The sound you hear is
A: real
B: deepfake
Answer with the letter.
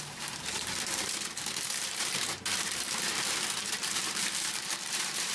B